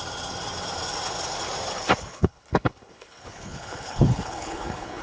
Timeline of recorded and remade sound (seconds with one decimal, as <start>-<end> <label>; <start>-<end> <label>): 0.0-2.1 recorded; 2.1-5.0 remade